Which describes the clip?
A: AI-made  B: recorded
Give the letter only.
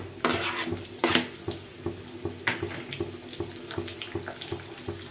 B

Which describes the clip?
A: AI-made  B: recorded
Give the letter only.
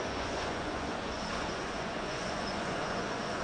A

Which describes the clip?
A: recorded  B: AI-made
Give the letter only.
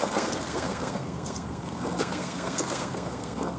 B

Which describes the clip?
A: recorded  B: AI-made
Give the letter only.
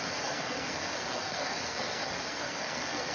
B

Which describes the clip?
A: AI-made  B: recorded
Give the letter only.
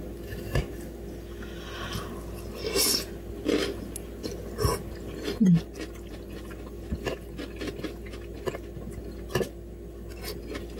B